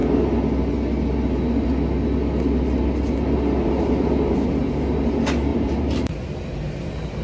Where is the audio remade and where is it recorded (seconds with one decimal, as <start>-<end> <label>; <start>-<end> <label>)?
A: 0.0-5.5 recorded; 5.5-6.1 remade; 6.1-7.2 recorded